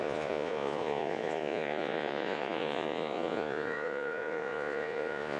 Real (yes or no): no